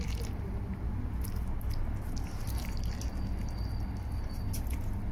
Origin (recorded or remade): recorded